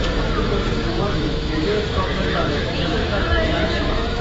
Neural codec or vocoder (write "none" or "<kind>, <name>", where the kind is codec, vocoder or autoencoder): autoencoder, DAC-VAE